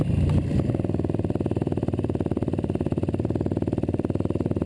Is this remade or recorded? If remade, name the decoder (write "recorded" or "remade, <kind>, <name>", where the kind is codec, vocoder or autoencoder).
recorded